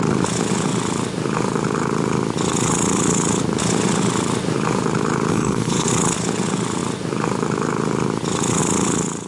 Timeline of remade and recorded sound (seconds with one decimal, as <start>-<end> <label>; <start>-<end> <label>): 0.0-5.3 recorded; 5.3-5.9 remade; 5.9-9.3 recorded